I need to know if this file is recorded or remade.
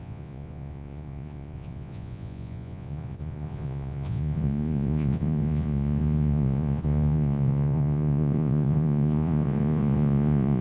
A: remade